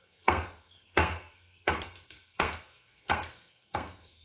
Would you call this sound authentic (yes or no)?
no